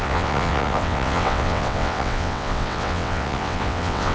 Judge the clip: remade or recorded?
remade